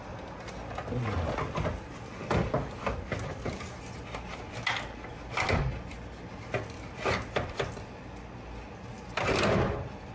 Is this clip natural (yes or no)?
yes